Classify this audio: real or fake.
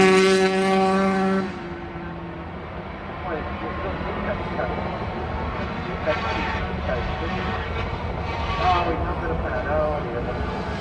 real